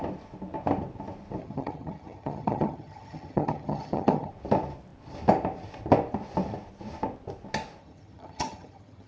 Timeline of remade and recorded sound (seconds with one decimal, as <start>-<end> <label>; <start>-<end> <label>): 0.0-1.4 recorded; 1.4-4.3 remade; 4.3-7.8 recorded; 7.8-9.1 remade